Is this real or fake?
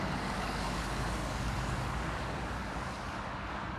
fake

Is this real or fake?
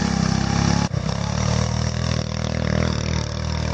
real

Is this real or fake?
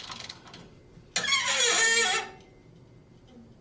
real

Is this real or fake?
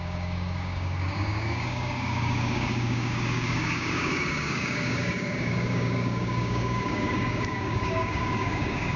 fake